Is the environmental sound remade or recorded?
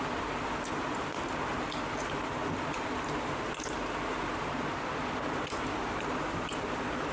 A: recorded